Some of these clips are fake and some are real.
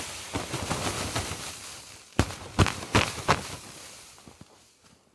fake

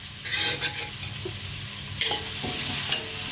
real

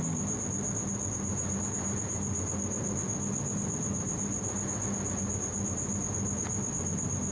real